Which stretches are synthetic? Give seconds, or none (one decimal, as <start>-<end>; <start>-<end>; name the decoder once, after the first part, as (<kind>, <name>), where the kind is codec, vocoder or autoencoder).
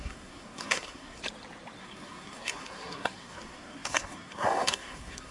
0.0-1.2 (codec, SNAC); 1.8-5.3